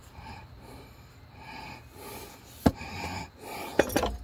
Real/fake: real